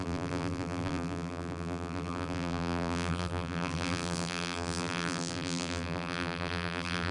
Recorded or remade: remade